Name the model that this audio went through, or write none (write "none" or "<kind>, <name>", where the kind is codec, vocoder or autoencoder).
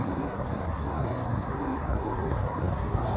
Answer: codec, SNAC